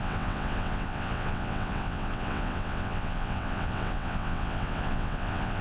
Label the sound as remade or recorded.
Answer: remade